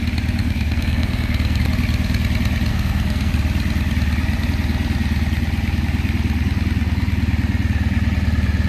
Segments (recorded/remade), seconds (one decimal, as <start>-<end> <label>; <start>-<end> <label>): 0.0-0.4 recorded; 0.4-1.6 remade; 1.6-2.7 recorded; 2.7-3.3 remade; 3.3-8.7 recorded